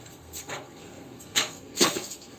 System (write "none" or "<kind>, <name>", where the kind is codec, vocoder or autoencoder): codec, SNAC